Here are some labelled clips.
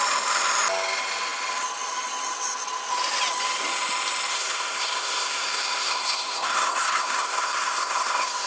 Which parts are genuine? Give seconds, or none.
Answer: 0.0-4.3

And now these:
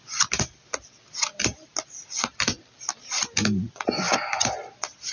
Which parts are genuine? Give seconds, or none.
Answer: 0.0-5.1